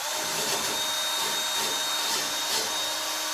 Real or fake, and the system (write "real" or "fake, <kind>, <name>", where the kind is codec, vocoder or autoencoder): real